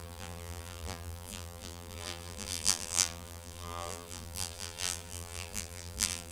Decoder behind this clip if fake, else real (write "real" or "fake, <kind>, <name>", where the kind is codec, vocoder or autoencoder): fake, vocoder, BigVGAN v2